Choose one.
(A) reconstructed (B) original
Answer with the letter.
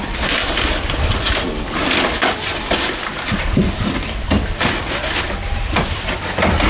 A